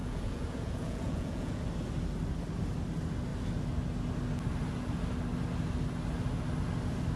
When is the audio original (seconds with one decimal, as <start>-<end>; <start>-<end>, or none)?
1.6-7.2